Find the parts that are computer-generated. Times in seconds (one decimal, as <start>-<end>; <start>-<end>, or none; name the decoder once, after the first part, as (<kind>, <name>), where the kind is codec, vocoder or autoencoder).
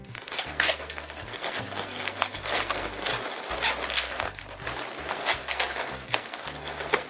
0.0-3.1 (codec, SNAC); 3.9-4.4; 5.0-7.1